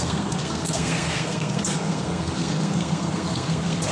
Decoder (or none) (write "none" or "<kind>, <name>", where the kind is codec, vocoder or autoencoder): codec, SNAC